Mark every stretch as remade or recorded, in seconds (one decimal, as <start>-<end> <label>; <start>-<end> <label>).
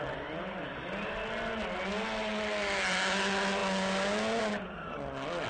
0.0-5.5 recorded